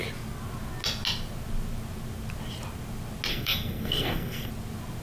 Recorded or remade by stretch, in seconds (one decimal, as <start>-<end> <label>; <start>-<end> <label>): 0.0-3.3 recorded; 3.3-4.5 remade; 4.5-5.0 recorded